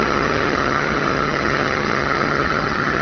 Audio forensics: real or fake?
fake